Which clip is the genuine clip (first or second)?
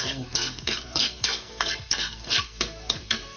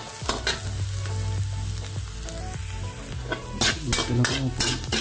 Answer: second